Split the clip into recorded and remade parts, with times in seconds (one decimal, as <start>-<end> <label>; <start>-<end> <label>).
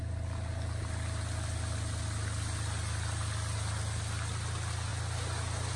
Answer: 0.0-5.8 recorded